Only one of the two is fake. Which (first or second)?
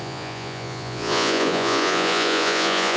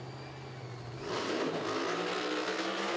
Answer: first